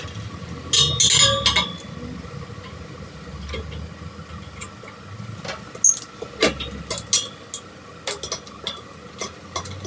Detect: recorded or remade recorded